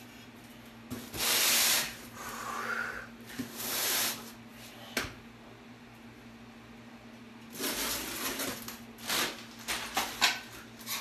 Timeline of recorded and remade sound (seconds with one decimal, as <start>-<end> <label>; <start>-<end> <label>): 0.0-11.0 recorded

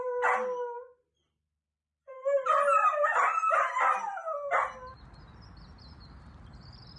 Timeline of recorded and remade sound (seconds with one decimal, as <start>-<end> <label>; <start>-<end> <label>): 0.0-7.0 recorded

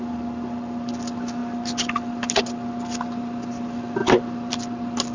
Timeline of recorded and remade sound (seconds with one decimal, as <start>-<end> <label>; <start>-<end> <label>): 0.0-5.1 recorded

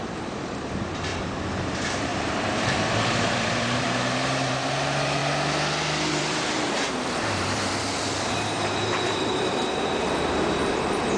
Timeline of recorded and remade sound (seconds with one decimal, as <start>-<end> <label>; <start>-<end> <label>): 0.0-1.1 remade; 1.1-1.6 recorded; 1.6-5.2 remade; 5.2-6.1 recorded; 6.1-11.2 remade

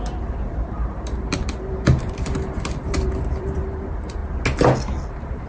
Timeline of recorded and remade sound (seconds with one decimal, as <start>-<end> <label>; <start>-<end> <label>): 0.0-4.2 remade; 4.2-5.1 recorded; 5.1-5.5 remade